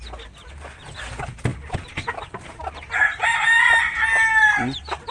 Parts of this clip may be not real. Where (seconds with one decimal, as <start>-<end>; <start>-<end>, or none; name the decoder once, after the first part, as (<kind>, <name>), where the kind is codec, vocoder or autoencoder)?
3.0-3.9 (vocoder, BigVGAN v2)